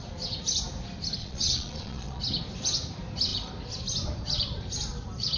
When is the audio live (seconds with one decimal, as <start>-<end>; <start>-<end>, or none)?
0.0-1.2; 2.2-5.4